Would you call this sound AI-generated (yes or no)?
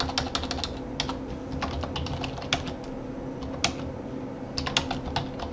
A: no